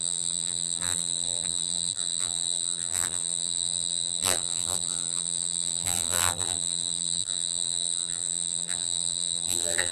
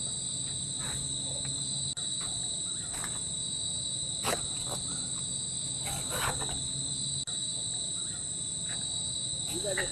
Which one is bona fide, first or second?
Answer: second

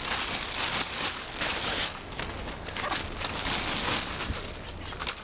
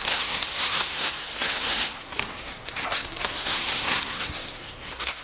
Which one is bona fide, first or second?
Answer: first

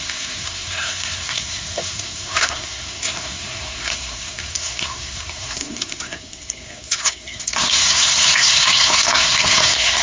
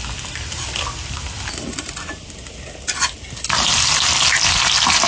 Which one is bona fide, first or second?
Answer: second